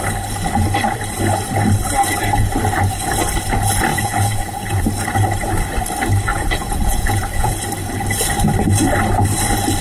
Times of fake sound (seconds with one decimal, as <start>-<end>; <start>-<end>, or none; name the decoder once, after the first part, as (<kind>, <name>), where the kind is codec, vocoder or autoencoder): 3.9-4.8 (vocoder, Vocos); 6.3-7.5